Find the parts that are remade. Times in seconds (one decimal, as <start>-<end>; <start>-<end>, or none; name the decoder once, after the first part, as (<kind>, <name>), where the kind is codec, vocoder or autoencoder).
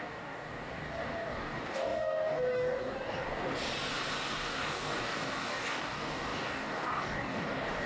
0.0-3.5 (codec, DAC); 4.3-7.9